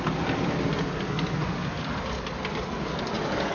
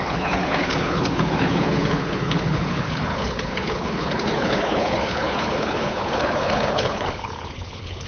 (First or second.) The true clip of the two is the first